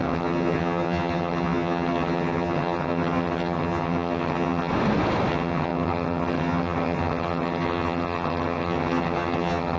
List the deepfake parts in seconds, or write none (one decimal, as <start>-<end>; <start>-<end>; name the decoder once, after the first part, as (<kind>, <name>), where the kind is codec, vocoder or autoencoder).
0.0-4.7 (vocoder, HiFi-GAN); 5.3-9.8